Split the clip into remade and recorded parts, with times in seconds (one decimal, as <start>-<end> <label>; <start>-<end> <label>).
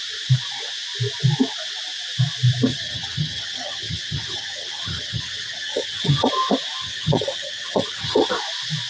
0.0-2.7 recorded; 2.7-6.3 remade; 6.3-6.8 recorded; 6.8-8.3 remade; 8.3-8.9 recorded